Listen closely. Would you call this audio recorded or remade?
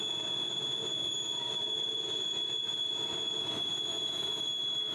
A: remade